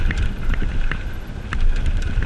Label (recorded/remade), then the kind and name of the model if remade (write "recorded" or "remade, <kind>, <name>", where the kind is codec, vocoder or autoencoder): recorded